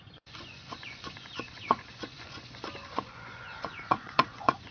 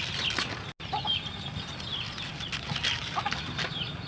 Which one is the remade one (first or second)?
first